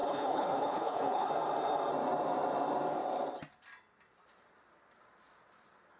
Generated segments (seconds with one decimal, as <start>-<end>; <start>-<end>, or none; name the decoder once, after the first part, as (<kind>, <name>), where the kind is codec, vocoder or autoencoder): 0.0-1.3 (codec, HILCodec)